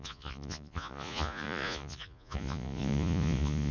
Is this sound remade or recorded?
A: remade